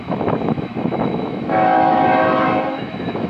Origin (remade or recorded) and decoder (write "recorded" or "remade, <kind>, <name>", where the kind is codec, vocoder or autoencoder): remade, autoencoder, DAC-VAE